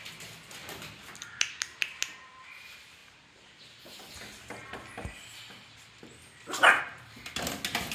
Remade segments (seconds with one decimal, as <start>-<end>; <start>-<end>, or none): 0.6-1.1